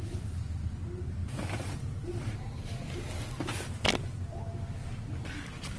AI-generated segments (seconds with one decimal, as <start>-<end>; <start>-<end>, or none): none